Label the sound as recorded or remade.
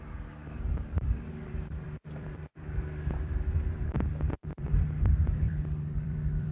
remade